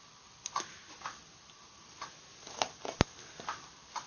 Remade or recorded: recorded